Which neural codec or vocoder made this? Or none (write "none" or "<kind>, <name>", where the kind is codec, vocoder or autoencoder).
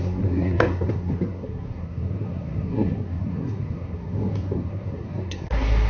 codec, SNAC